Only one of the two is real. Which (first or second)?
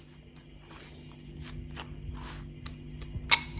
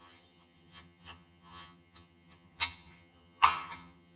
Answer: first